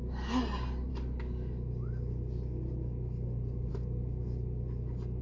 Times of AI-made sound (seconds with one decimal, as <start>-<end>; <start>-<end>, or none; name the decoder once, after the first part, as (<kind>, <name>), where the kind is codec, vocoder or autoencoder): none

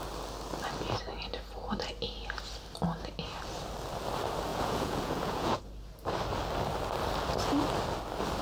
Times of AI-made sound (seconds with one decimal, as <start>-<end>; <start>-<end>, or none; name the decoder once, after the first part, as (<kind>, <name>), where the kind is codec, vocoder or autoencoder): 4.5-5.6 (vocoder, Vocos)

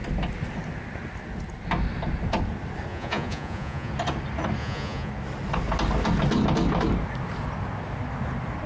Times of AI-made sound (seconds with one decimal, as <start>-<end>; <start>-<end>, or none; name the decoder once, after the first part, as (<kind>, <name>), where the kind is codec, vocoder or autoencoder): 2.9-3.9 (vocoder, Vocos); 4.6-5.1

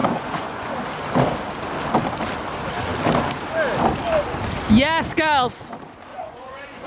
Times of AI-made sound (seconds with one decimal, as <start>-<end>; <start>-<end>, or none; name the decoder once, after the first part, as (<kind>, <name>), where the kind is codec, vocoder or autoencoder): 0.0-0.7 (vocoder, Vocos); 6.1-6.9

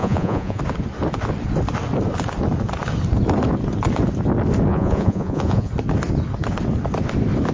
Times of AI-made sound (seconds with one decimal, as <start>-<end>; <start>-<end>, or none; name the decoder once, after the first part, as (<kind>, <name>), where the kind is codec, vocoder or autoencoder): 0.0-0.6 (vocoder, Vocos); 4.7-5.7

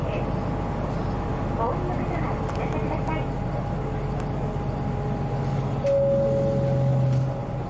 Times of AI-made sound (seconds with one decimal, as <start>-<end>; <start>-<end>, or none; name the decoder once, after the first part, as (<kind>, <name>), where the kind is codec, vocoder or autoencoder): none

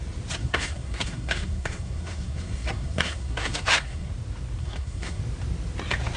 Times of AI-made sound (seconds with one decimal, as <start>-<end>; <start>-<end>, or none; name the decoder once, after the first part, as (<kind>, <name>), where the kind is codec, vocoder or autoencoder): 0.4-4.1 (codec, SNAC); 4.6-5.2

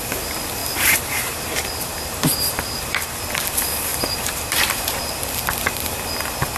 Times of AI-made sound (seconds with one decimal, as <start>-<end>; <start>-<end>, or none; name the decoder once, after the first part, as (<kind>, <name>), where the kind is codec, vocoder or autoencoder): 0.6-3.2 (vocoder, BigVGAN v2); 3.9-5.3